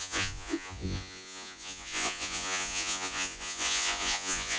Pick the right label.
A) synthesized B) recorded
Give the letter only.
A